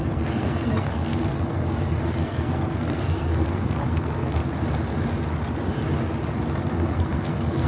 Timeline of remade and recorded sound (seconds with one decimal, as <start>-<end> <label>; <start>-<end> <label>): 0.0-4.4 remade; 4.4-6.6 recorded; 6.6-7.7 remade